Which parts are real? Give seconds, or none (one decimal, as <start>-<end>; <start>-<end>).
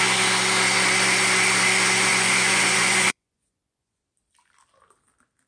0.0-2.1; 4.0-5.5